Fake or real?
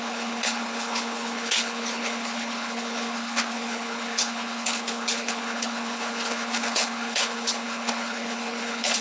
fake